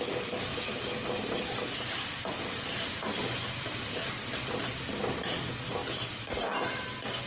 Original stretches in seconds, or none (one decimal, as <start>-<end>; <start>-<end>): 0.0-7.3